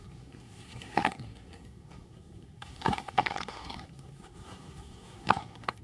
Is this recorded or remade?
remade